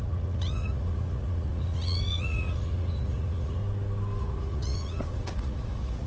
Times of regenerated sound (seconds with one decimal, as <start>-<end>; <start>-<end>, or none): 0.0-3.6; 4.2-6.1